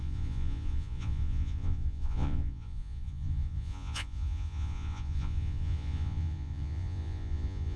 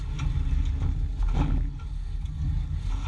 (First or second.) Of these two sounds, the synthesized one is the first